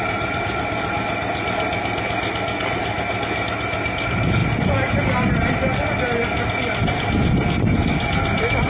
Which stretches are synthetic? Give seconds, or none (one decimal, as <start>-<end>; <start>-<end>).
none